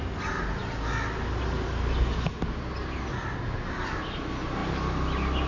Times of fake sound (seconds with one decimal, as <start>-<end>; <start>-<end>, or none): none